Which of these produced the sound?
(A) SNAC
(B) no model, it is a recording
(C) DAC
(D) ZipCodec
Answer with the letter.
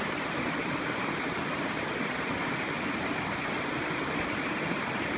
B